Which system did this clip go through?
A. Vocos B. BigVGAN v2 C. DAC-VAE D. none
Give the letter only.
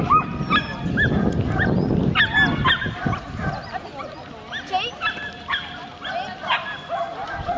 D